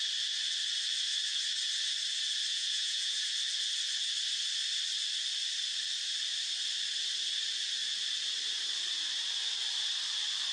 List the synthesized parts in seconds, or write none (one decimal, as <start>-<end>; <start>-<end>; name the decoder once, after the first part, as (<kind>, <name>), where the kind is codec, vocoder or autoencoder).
2.5-3.3 (vocoder, Vocos)